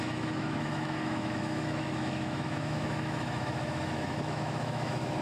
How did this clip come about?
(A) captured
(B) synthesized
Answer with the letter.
B